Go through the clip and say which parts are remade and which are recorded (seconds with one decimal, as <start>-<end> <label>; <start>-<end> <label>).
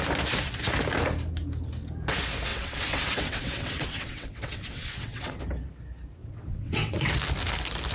0.0-2.5 recorded; 2.5-5.4 remade; 5.4-6.2 recorded; 6.2-7.1 remade; 7.1-7.9 recorded